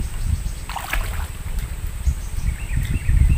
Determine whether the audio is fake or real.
real